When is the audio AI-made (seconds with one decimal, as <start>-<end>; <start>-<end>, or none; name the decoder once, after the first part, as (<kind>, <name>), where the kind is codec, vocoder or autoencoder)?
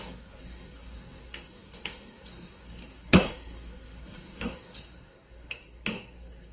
0.0-6.5 (codec, SNAC)